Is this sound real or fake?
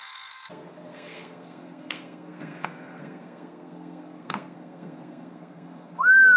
fake